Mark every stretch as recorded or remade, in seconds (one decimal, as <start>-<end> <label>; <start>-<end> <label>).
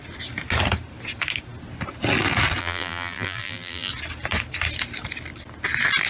0.0-2.6 recorded; 2.6-3.9 remade; 3.9-6.1 recorded